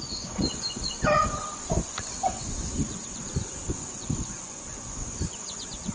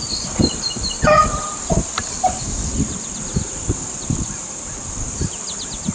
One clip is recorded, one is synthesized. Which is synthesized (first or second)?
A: first